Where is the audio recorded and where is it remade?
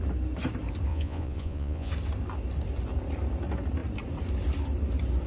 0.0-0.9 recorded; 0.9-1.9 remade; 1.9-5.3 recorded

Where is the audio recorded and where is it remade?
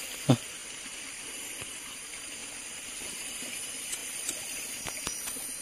0.0-0.6 recorded; 0.6-1.2 remade; 1.2-2.4 recorded; 2.4-3.2 remade; 3.2-5.6 recorded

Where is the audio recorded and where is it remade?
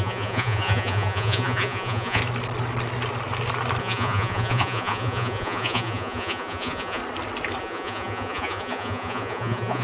0.0-2.2 remade; 2.2-3.8 recorded; 3.8-7.0 remade; 7.0-7.6 recorded; 7.6-9.8 remade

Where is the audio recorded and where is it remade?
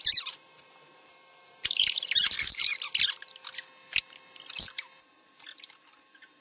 0.0-2.7 remade; 2.7-4.6 recorded; 4.6-6.4 remade